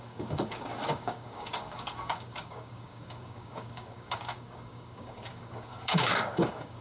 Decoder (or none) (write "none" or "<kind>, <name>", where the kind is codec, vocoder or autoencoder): codec, DAC